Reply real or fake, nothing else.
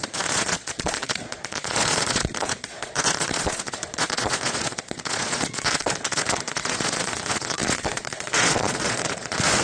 fake